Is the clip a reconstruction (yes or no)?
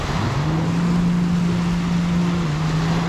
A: no